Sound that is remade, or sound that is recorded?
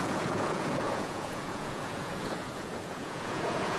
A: remade